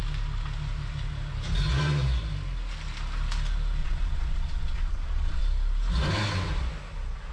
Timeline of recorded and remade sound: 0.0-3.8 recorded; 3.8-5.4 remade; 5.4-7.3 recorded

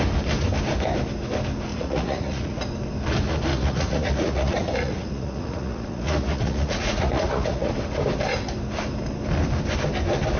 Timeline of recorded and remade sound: 0.0-1.7 recorded; 1.7-2.6 remade; 2.6-3.5 recorded; 3.5-7.7 remade; 7.7-10.4 recorded